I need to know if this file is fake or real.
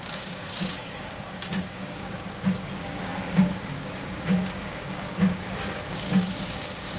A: fake